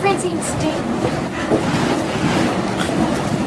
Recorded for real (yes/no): yes